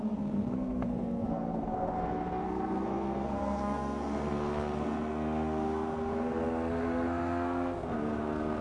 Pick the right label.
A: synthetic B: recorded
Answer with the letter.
A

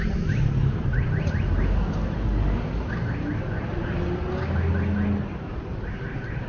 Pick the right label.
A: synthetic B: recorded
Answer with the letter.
B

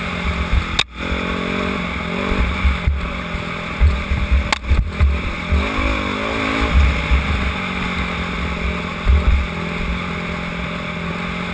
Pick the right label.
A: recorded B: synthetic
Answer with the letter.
A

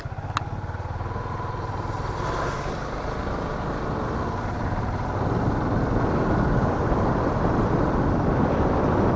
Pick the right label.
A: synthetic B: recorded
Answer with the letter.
B